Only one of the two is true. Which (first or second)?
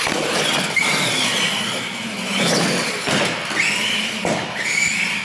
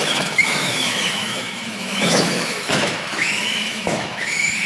first